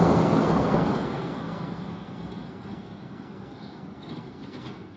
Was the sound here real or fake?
fake